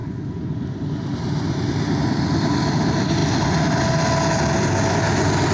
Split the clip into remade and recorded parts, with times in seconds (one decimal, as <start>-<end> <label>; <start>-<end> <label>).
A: 0.0-5.5 recorded